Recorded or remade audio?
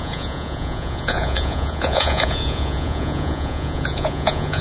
remade